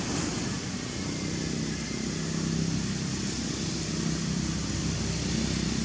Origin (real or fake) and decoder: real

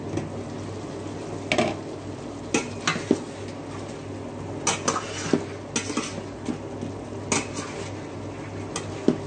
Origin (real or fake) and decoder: real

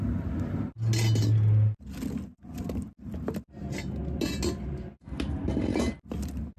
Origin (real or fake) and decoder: real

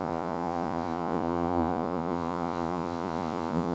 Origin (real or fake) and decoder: fake, vocoder, Vocos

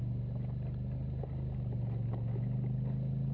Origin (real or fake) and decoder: real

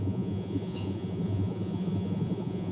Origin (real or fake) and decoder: fake, vocoder, Vocos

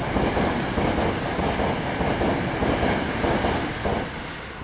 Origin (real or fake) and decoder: real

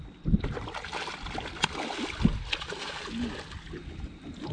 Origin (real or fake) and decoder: real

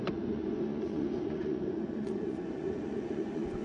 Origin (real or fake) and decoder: fake, vocoder, Vocos